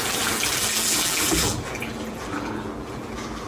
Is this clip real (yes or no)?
no